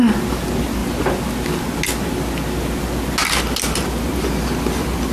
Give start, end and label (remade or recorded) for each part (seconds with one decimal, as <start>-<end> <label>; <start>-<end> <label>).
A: 0.0-5.1 recorded